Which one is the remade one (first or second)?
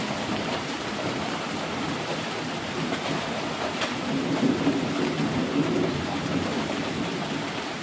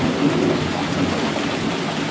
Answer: first